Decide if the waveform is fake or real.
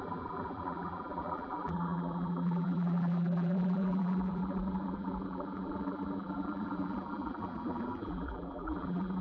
fake